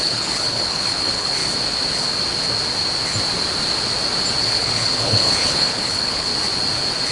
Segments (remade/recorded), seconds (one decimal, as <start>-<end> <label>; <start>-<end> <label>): 0.0-1.4 remade; 1.4-4.4 recorded; 4.4-6.3 remade; 6.3-7.1 recorded